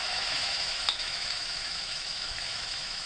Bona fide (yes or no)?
no